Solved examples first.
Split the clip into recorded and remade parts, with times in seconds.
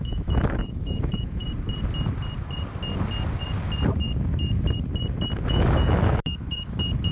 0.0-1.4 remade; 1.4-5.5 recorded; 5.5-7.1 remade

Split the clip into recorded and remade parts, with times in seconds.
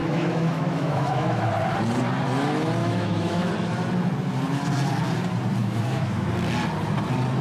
0.0-1.5 remade; 1.5-2.8 recorded; 2.8-3.5 remade; 3.5-5.6 recorded; 5.6-6.3 remade; 6.3-7.4 recorded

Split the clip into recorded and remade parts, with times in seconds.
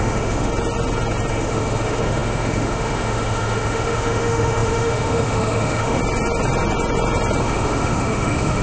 0.0-0.5 remade; 0.5-1.3 recorded; 1.3-6.0 remade; 6.0-7.4 recorded; 7.4-8.6 remade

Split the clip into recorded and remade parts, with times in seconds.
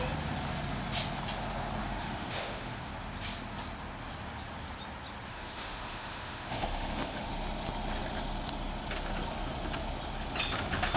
0.0-1.8 recorded; 1.8-2.9 remade; 2.9-5.3 recorded; 5.3-7.3 remade; 7.3-11.0 recorded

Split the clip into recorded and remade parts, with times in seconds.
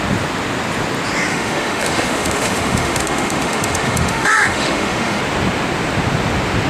0.0-1.3 recorded; 1.3-5.2 remade; 5.2-6.7 recorded